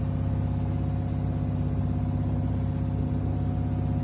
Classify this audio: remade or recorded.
recorded